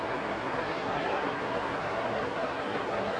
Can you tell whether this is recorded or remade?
remade